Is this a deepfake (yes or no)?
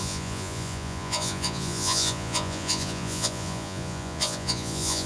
yes